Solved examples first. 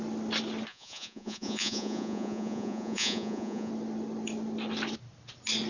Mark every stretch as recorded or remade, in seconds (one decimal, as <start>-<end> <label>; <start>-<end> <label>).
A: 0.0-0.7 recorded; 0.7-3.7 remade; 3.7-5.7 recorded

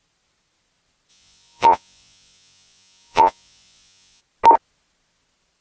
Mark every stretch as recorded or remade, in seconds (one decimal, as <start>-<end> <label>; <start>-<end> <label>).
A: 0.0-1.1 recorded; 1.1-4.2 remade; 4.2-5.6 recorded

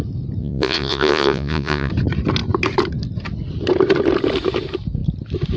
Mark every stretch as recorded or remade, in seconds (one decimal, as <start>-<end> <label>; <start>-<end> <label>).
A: 0.0-0.4 recorded; 0.4-1.9 remade; 1.9-5.6 recorded

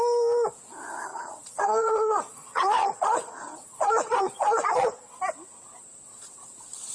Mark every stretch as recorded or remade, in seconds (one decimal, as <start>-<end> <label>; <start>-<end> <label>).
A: 0.0-1.1 recorded; 1.1-5.2 remade; 5.2-6.9 recorded

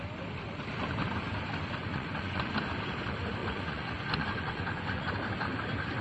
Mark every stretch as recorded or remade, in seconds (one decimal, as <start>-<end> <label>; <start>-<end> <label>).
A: 0.0-1.8 recorded; 1.8-2.5 remade; 2.5-3.4 recorded; 3.4-5.1 remade; 5.1-6.0 recorded